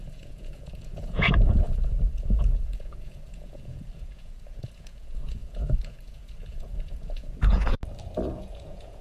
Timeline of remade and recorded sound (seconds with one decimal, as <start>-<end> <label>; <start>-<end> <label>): 0.0-7.8 remade; 7.8-8.3 recorded; 8.3-9.0 remade

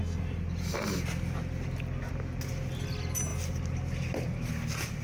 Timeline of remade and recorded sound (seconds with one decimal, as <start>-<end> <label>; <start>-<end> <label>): 0.0-5.0 recorded

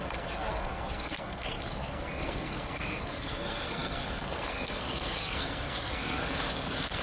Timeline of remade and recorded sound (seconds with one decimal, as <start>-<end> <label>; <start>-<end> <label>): 0.0-7.0 remade